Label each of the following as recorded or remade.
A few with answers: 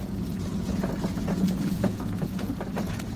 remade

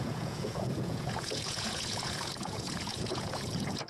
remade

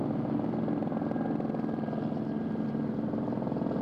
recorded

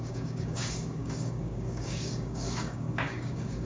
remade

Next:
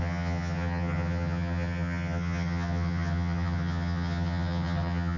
remade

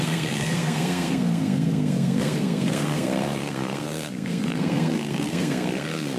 remade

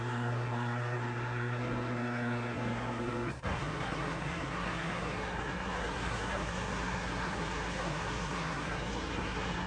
remade